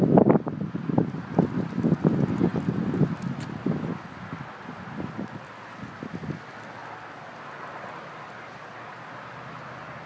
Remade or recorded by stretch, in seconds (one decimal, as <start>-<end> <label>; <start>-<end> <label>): 0.0-10.1 recorded

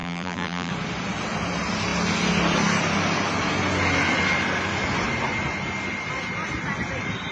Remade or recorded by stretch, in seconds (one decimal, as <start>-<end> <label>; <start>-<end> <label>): 0.0-0.7 remade; 0.7-7.3 recorded

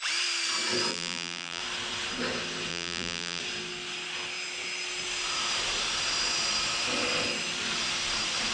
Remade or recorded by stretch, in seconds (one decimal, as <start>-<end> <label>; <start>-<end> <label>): 0.0-0.9 recorded; 0.9-1.6 remade; 1.6-2.7 recorded; 2.7-3.4 remade; 3.4-8.5 recorded

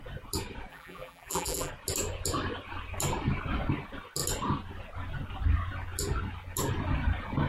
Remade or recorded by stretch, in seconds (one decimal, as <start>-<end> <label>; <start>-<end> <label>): 0.0-0.7 recorded; 0.7-1.7 remade; 1.7-7.5 recorded